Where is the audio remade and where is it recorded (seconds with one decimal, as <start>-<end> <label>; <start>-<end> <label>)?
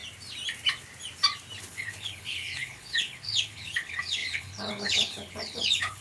0.0-1.6 recorded; 1.6-6.0 remade